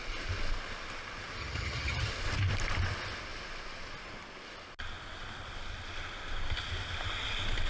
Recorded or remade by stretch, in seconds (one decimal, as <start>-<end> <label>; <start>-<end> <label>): 0.0-1.4 recorded; 1.4-2.1 remade; 2.1-7.7 recorded